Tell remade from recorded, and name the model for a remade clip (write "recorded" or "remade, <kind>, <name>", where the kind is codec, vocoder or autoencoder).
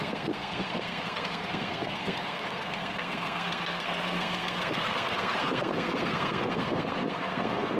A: remade, codec, SNAC